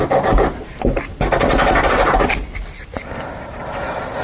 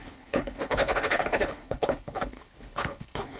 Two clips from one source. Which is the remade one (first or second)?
second